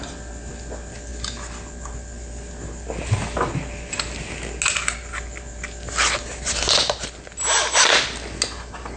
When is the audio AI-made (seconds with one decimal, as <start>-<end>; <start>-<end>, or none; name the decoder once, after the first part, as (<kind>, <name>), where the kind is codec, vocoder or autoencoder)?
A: none